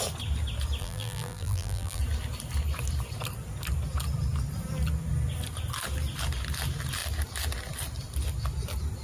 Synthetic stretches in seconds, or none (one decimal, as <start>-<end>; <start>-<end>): 0.8-2.0